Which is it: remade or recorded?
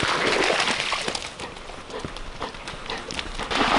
recorded